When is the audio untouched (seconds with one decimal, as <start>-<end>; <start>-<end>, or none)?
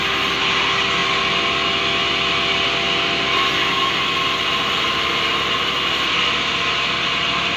0.0-7.6